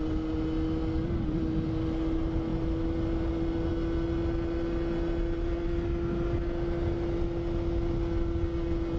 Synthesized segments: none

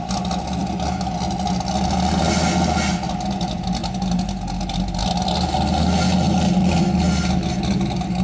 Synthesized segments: none

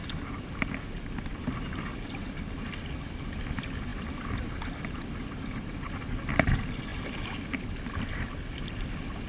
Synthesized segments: none

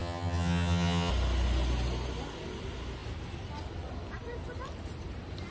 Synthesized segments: 0.0-1.1 (vocoder, HiFi-GAN)

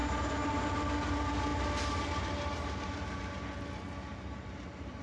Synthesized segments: 0.0-0.5 (vocoder, BigVGAN v2); 2.5-3.2; 4.1-5.0